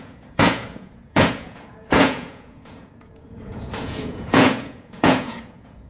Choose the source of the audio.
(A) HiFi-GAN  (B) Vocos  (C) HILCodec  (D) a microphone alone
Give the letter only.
B